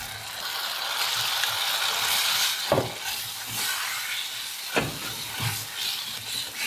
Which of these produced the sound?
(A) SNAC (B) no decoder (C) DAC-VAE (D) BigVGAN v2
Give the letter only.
B